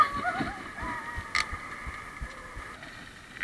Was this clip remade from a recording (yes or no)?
no